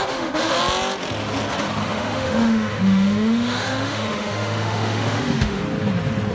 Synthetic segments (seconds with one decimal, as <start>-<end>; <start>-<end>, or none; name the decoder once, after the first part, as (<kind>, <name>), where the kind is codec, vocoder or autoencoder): 0.0-0.6 (autoencoder, DAC-VAE); 1.8-5.6